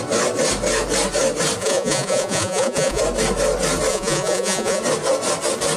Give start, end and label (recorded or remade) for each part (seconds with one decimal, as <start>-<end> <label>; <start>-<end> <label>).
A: 0.0-1.6 recorded; 1.6-3.0 remade; 3.0-3.9 recorded; 3.9-4.8 remade; 4.8-5.8 recorded